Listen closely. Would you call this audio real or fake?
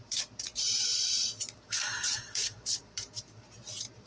fake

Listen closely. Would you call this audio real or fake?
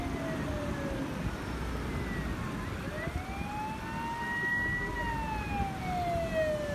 real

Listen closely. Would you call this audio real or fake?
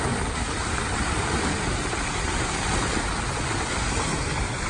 real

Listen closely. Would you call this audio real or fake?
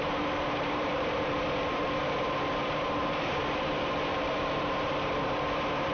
fake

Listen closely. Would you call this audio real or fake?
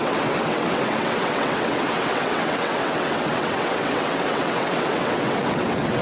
fake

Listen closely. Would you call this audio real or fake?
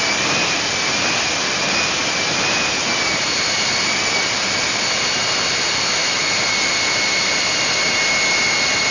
real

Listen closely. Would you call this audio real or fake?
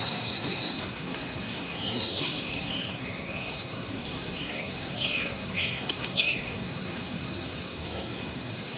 fake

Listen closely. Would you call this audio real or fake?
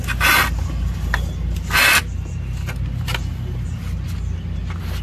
real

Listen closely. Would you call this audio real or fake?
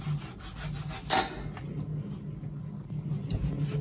real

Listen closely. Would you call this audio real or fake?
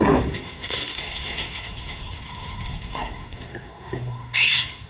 fake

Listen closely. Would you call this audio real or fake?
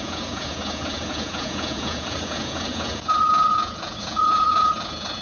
fake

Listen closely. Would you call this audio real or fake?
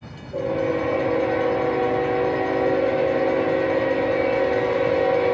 real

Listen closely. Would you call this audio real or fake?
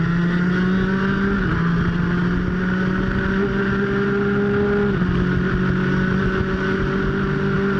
real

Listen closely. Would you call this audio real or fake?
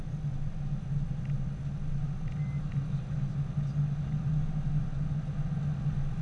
real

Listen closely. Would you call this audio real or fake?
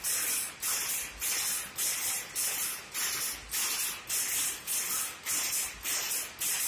real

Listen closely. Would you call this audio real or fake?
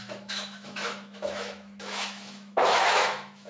fake